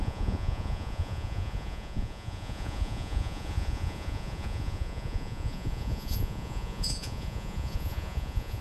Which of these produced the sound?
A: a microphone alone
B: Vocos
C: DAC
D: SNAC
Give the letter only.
B